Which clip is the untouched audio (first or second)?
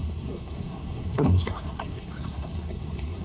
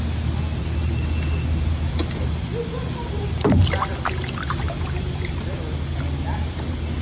second